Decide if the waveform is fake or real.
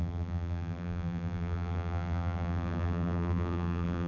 fake